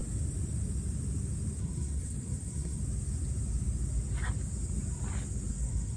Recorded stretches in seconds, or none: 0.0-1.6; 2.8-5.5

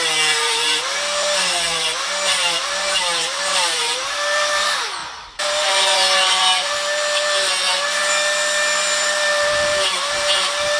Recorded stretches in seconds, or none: 8.0-8.8

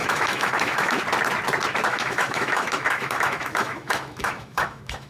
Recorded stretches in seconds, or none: 1.0-1.9

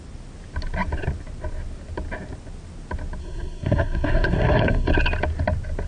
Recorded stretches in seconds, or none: 0.0-3.2; 4.9-5.9

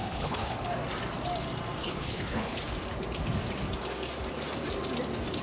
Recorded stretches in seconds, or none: 0.5-1.8; 2.6-5.4